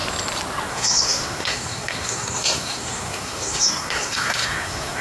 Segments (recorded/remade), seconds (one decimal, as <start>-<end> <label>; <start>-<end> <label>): 0.0-0.7 recorded; 0.7-5.0 remade